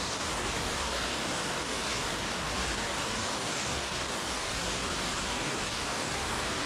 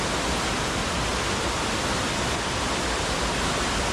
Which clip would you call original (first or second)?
second